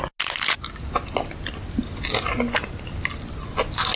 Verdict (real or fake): real